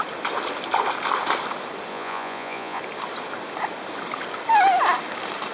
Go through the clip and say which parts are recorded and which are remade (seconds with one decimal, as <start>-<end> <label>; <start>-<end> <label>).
0.0-1.9 recorded; 1.9-2.8 remade; 2.8-5.5 recorded